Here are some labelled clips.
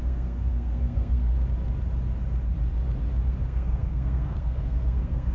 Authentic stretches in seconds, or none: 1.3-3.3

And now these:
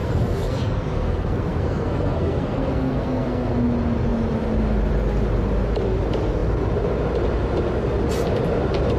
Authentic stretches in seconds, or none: 3.5-9.0

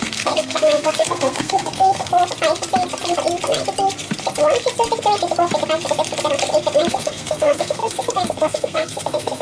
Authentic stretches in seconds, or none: 2.1-6.9

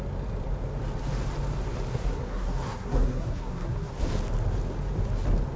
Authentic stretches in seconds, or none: 0.0-1.9; 4.1-5.6

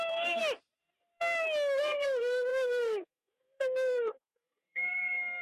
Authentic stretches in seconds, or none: 0.4-1.8

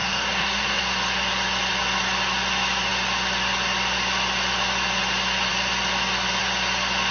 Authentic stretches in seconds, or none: 0.8-7.1